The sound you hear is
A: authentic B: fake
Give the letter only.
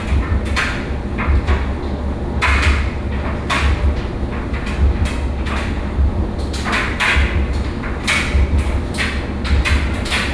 A